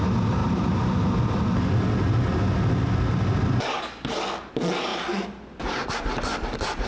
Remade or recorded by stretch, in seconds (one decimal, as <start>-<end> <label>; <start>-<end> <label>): 0.0-6.9 recorded